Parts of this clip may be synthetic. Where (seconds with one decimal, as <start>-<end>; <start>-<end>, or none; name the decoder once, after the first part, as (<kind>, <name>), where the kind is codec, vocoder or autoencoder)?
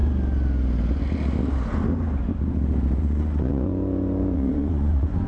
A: 3.0-5.3 (vocoder, Vocos)